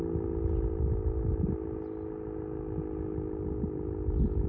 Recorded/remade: recorded